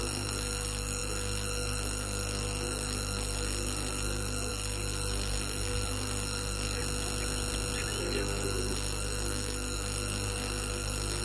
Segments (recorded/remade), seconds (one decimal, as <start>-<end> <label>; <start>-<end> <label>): 0.0-6.8 remade; 6.8-8.0 recorded; 8.0-11.2 remade